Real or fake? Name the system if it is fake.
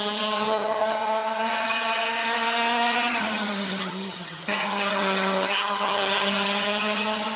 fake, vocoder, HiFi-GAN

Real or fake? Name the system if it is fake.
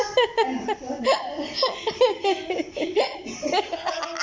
real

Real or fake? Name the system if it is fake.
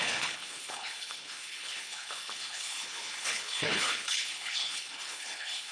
fake, codec, HILCodec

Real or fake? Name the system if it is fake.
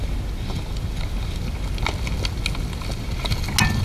real